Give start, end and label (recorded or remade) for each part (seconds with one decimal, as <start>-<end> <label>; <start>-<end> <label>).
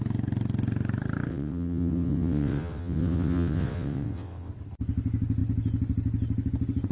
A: 0.0-1.3 recorded; 1.3-4.5 remade; 4.5-6.9 recorded